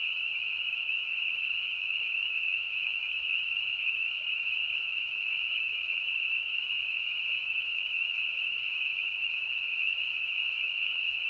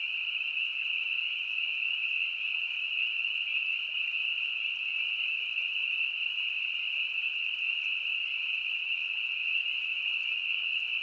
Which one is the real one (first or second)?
second